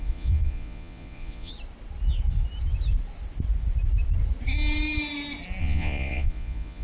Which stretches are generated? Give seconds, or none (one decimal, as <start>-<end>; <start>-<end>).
0.0-1.5; 5.6-6.8

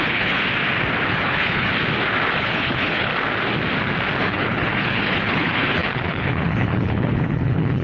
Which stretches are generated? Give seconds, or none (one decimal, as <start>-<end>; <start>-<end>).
0.0-0.4; 1.1-1.7; 2.4-3.1; 4.2-7.8

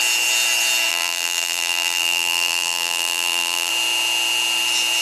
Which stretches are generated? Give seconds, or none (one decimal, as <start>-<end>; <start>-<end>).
0.9-3.7

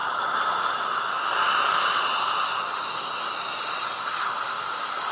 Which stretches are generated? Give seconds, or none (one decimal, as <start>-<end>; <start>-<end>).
none